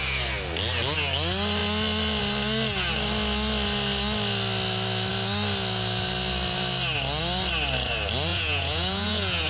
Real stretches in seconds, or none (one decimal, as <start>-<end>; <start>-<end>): 0.0-8.3